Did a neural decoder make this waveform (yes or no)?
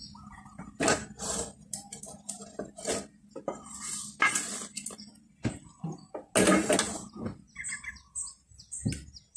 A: no